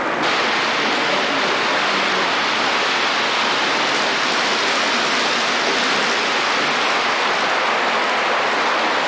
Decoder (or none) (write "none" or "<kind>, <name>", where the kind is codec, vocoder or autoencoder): none